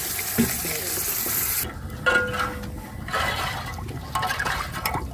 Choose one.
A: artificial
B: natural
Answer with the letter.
B